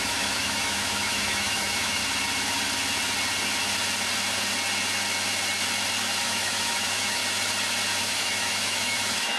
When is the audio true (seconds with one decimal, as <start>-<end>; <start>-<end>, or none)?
2.0-6.2; 7.2-8.0